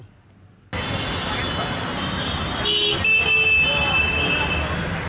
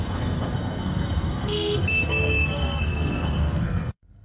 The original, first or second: first